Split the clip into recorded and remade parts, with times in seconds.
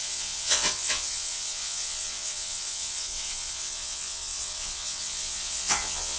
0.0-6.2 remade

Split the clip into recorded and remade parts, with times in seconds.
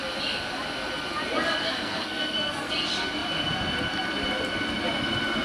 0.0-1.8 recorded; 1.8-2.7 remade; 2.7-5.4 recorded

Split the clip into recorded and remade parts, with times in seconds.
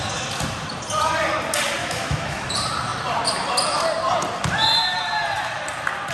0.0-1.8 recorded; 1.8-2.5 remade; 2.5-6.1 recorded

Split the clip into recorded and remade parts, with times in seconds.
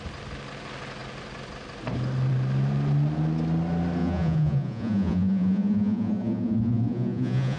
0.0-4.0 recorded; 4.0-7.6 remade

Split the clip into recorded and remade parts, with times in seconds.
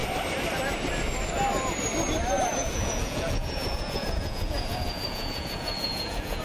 0.0-2.6 recorded; 2.6-6.4 remade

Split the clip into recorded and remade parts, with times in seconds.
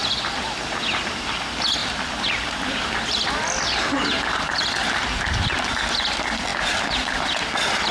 0.0-0.7 remade; 0.7-1.8 recorded; 1.8-5.9 remade; 5.9-6.5 recorded; 6.5-7.9 remade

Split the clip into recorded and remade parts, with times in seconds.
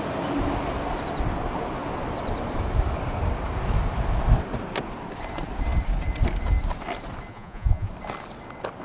0.0-7.3 recorded; 7.3-7.9 remade; 7.9-8.8 recorded